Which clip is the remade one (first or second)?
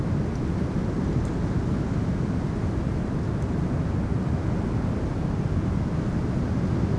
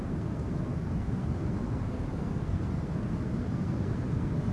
second